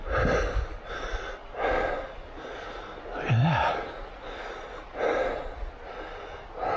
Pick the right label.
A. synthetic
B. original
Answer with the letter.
B